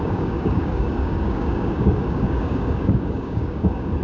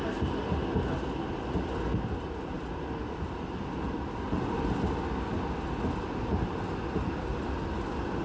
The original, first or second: second